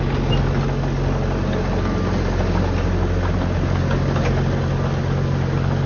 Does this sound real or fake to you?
real